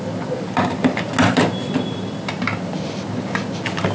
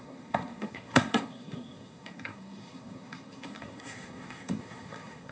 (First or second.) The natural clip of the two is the first